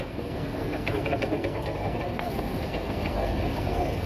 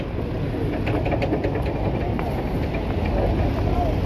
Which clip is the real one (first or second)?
second